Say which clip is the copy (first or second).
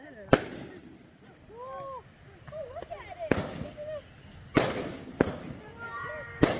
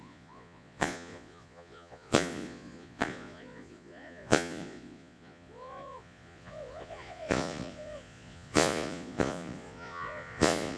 second